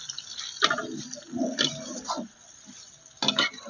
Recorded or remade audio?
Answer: recorded